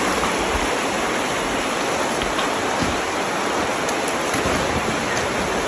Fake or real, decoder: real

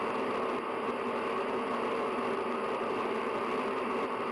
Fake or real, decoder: real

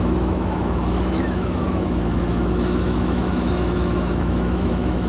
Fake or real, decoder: fake, autoencoder, DAC-VAE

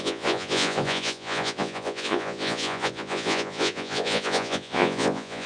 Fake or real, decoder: fake, vocoder, Vocos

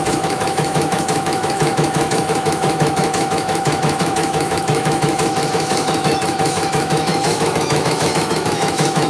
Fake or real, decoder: fake, autoencoder, DAC-VAE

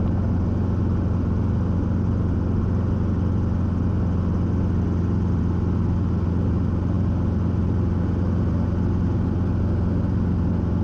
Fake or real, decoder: real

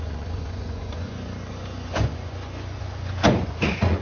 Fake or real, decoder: fake, vocoder, Vocos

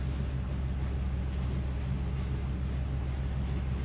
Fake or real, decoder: real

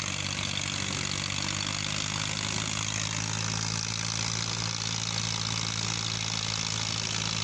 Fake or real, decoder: real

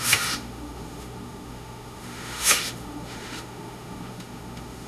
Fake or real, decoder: fake, autoencoder, DAC-VAE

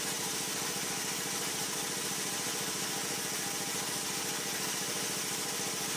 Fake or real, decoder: real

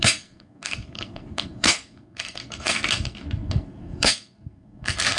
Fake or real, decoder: fake, codec, SNAC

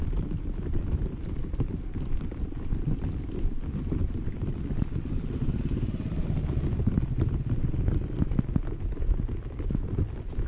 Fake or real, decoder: real